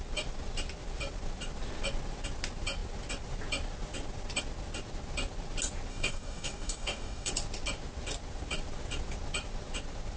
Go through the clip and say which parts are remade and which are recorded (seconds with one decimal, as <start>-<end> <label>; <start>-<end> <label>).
0.0-5.9 recorded; 5.9-7.3 remade; 7.3-10.2 recorded

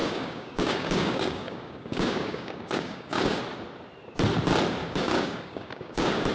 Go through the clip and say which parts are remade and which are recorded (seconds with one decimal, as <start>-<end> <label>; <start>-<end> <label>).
0.0-3.4 remade; 3.4-4.8 recorded; 4.8-6.3 remade

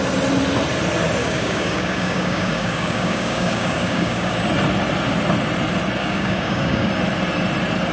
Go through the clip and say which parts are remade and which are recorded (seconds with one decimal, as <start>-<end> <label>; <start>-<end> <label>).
0.0-1.2 recorded; 1.2-4.4 remade; 4.4-6.0 recorded; 6.0-6.9 remade; 6.9-7.9 recorded

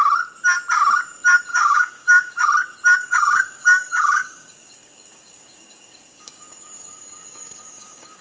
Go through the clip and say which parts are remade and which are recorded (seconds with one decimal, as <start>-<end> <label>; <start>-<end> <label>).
0.0-1.5 recorded; 1.5-2.5 remade; 2.5-3.0 recorded; 3.0-8.2 remade

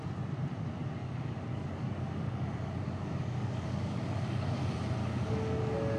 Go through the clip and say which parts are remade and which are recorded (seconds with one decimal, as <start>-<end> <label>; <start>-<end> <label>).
0.0-1.0 recorded; 1.0-4.6 remade; 4.6-5.0 recorded; 5.0-6.0 remade

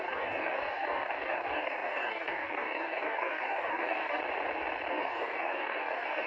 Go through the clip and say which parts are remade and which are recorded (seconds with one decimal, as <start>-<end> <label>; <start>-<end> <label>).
0.0-4.2 remade; 4.2-4.9 recorded; 4.9-6.3 remade

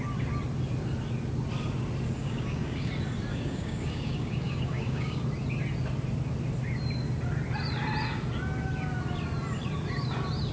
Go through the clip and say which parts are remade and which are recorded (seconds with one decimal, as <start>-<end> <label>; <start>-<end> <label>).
0.0-2.2 recorded; 2.2-2.9 remade; 2.9-3.3 recorded; 3.3-5.2 remade; 5.2-10.5 recorded

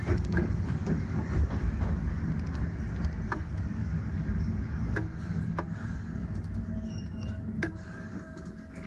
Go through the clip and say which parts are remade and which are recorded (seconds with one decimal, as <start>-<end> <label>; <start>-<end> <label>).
0.0-2.2 remade; 2.2-3.3 recorded; 3.3-8.9 remade